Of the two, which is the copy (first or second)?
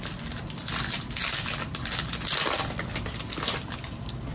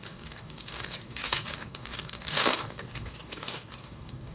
second